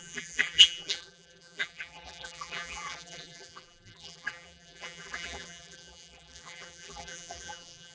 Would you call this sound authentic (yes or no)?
no